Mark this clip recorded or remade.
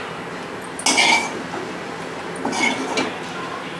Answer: recorded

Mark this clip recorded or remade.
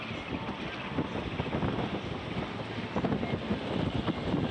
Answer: recorded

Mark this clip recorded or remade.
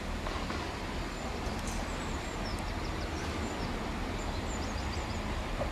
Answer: recorded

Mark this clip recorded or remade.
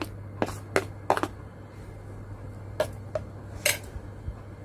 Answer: recorded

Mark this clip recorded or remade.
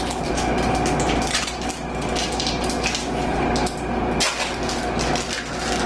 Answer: recorded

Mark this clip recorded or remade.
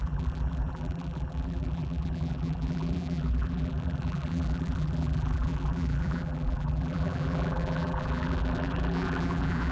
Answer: remade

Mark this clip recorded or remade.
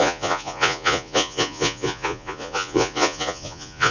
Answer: remade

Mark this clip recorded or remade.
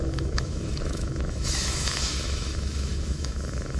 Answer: remade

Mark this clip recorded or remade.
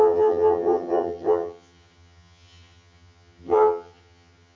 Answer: remade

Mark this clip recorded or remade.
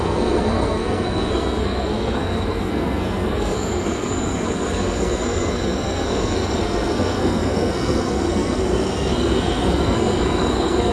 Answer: remade